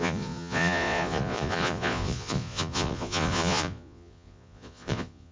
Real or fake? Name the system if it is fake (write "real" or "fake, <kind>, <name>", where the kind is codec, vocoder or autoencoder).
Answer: fake, vocoder, Vocos